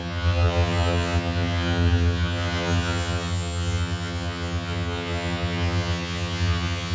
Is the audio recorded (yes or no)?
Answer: no